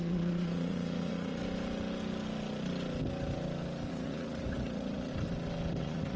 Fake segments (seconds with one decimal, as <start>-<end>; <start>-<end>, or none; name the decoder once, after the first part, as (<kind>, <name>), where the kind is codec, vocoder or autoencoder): 0.0-1.4 (vocoder, Vocos); 3.9-5.1; 5.8-6.2